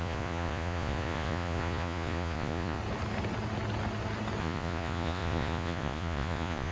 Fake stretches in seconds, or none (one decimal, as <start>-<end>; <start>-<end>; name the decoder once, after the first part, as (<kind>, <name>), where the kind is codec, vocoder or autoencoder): 0.0-2.8 (vocoder, Vocos); 4.4-6.7